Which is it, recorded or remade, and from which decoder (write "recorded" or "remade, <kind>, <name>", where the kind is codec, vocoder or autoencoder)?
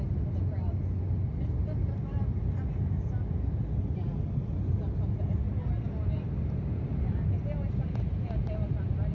recorded